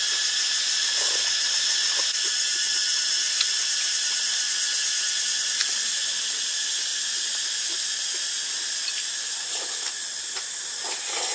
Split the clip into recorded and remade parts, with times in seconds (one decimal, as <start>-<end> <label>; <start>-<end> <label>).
0.0-11.3 recorded